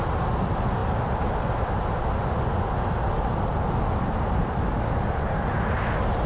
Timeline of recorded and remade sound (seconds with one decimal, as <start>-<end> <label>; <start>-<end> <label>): 0.0-6.3 recorded